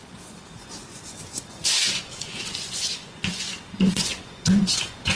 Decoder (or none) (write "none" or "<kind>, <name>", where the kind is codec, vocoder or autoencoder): vocoder, Vocos